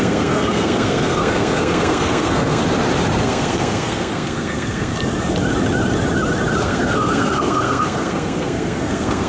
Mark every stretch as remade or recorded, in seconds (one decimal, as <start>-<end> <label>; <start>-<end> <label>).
0.0-2.6 remade; 2.6-3.2 recorded; 3.2-4.9 remade; 4.9-6.6 recorded; 6.6-9.3 remade